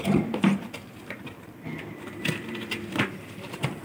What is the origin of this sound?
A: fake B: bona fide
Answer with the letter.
A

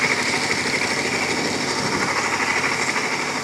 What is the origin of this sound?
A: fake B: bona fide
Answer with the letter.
B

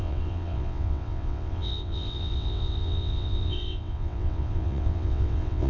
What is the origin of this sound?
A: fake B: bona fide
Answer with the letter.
A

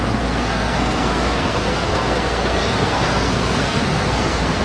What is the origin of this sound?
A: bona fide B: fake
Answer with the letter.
B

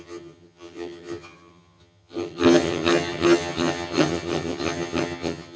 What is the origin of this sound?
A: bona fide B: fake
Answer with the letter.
B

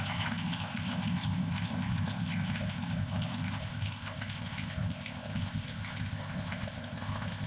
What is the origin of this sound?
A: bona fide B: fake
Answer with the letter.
B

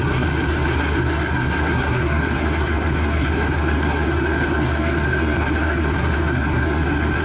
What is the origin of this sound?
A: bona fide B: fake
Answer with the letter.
B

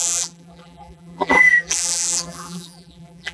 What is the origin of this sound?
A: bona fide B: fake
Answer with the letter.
B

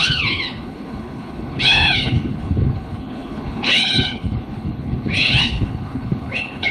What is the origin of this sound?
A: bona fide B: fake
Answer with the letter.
B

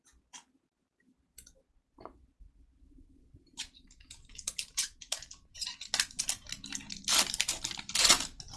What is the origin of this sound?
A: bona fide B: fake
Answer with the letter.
B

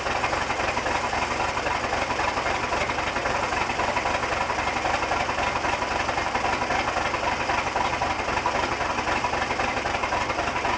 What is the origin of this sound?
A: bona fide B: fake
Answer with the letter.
A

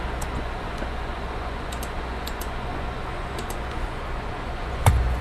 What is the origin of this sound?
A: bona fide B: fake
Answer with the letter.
B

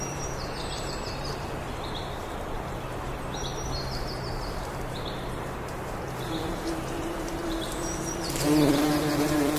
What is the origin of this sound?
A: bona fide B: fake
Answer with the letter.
B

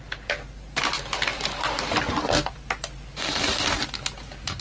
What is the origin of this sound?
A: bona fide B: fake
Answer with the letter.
A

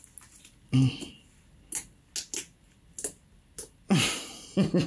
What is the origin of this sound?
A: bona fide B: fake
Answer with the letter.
A